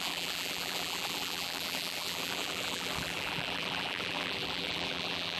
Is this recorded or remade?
remade